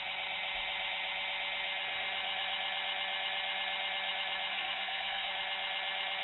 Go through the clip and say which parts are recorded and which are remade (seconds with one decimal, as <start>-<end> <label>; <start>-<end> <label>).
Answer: 0.0-4.5 recorded; 4.5-5.3 remade; 5.3-6.2 recorded